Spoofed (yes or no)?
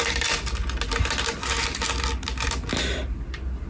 no